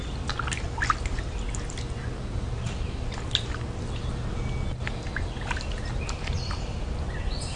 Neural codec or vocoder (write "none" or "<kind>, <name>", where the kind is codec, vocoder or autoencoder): none